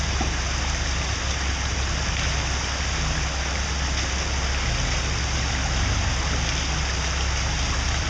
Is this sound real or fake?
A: real